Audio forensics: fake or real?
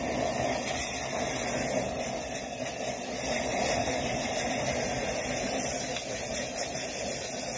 real